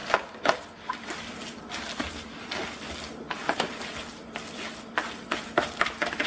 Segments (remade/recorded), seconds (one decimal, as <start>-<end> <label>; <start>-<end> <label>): 0.0-6.3 recorded